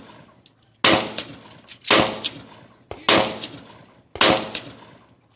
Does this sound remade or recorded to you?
recorded